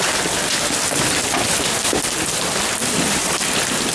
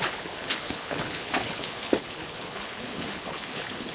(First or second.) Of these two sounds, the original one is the first